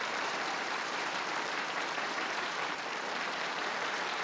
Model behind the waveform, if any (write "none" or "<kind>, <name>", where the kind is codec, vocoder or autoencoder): vocoder, BigVGAN v2